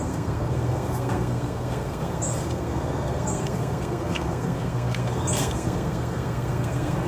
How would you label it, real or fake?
fake